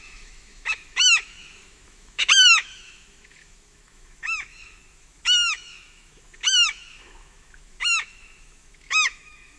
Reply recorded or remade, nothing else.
remade